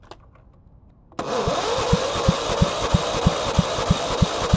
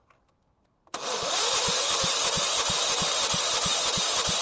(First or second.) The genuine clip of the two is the first